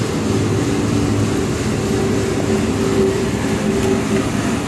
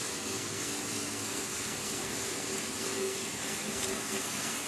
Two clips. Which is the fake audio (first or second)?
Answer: second